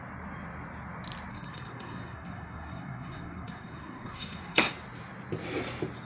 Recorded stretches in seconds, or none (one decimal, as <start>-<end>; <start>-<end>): 0.0-1.3; 4.7-6.0